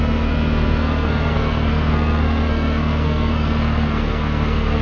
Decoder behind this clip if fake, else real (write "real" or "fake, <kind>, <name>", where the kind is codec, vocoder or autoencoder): fake, codec, SNAC